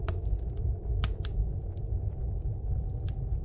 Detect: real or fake real